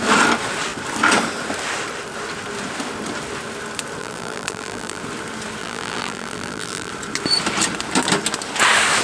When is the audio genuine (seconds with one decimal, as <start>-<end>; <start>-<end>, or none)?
0.0-4.0; 5.0-5.6; 6.9-9.0